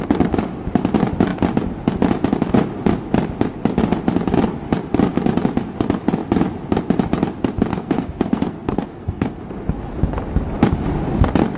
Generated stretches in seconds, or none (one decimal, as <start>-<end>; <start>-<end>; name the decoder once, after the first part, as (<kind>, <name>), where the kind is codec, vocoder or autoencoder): 7.7-9.4 (codec, SNAC)